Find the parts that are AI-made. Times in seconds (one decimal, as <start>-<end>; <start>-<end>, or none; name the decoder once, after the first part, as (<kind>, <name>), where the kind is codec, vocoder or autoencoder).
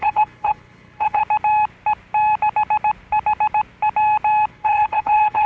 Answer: 0.0-1.2 (codec, HILCodec); 4.5-5.5